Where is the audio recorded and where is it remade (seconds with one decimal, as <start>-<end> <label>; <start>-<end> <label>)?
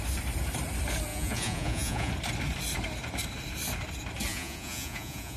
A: 0.0-1.1 recorded; 1.1-2.1 remade; 2.1-4.3 recorded; 4.3-5.4 remade